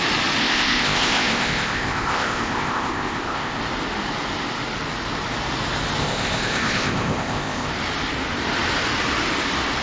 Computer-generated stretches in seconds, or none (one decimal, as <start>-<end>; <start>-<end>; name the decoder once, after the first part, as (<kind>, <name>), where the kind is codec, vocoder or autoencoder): 0.4-3.6 (codec, ZipCodec); 6.0-7.7